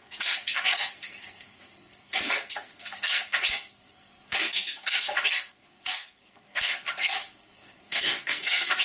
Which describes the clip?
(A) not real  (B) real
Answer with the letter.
A